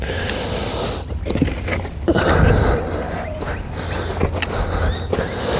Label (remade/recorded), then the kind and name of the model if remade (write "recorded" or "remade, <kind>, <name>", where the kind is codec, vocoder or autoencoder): recorded